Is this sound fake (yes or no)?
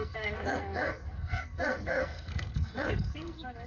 yes